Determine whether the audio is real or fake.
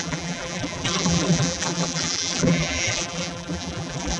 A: fake